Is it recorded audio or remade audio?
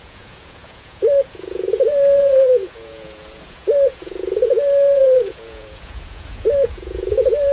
remade